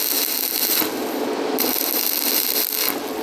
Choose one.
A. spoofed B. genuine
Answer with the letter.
B